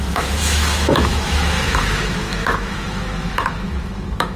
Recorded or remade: remade